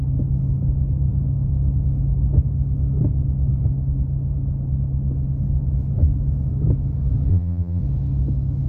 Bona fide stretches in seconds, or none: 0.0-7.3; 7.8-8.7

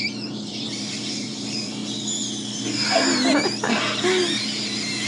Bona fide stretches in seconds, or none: 1.8-5.1

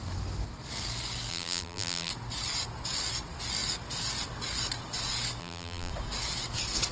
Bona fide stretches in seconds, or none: 0.0-1.3; 2.1-5.4; 5.9-6.9